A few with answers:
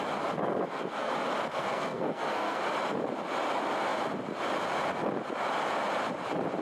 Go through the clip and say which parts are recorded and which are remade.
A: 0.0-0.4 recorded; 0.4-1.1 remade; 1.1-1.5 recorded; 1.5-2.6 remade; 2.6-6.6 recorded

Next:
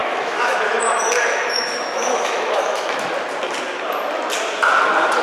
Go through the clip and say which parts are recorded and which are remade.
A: 0.0-3.1 remade; 3.1-5.2 recorded

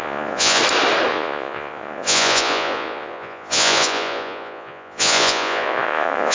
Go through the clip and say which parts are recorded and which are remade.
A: 0.0-0.6 remade; 0.6-1.1 recorded; 1.1-6.3 remade

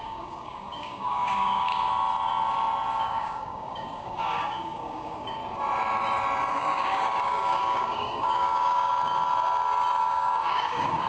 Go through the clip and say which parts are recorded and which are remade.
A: 0.0-1.7 remade; 1.7-3.0 recorded; 3.0-5.4 remade; 5.4-6.5 recorded; 6.5-8.9 remade; 8.9-10.0 recorded; 10.0-11.1 remade

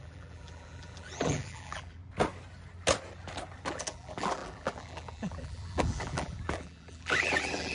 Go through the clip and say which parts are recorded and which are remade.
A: 0.0-2.0 remade; 2.0-3.7 recorded; 3.7-7.7 remade

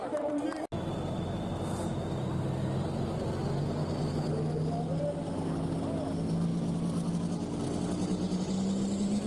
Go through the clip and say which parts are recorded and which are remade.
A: 0.0-9.3 recorded